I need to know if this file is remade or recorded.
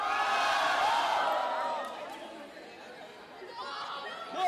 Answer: recorded